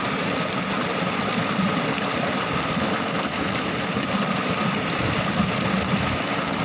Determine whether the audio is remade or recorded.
recorded